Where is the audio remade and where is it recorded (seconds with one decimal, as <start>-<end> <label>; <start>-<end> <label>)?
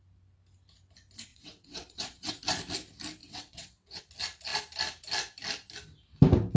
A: 0.0-1.3 recorded; 1.3-2.3 remade; 2.3-3.2 recorded; 3.2-4.0 remade; 4.0-6.6 recorded